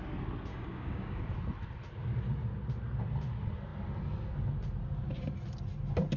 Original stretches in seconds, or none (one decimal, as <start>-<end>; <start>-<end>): 0.0-0.5; 1.2-6.2